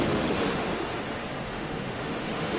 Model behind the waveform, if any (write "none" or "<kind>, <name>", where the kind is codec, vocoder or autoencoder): autoencoder, DAC-VAE